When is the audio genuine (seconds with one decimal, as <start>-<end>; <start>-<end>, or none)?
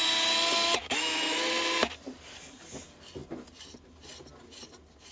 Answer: 0.0-0.8; 1.5-5.1